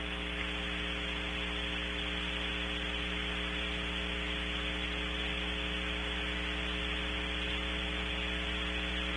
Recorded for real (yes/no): yes